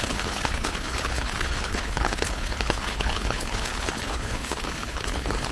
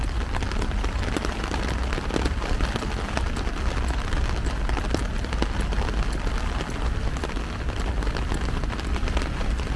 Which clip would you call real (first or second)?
second